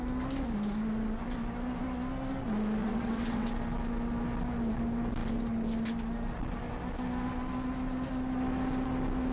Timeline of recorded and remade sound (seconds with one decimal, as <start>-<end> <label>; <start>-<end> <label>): 0.0-2.8 recorded; 2.8-3.5 remade; 3.5-9.3 recorded